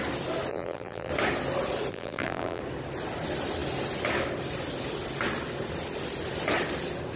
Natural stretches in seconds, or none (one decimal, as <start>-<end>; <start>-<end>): 0.0-0.5; 1.1-1.9; 2.6-7.2